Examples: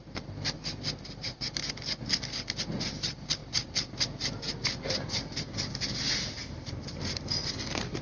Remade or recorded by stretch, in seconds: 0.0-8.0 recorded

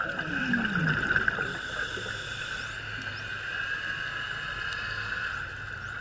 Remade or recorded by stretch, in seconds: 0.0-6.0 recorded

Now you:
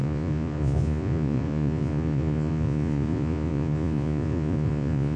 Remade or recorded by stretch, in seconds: 0.0-5.2 remade

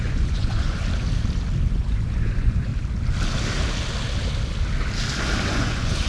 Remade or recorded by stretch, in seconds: 0.0-0.8 remade; 0.8-1.7 recorded; 1.7-2.7 remade; 2.7-5.5 recorded; 5.5-6.1 remade